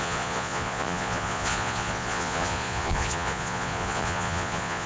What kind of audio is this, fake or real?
fake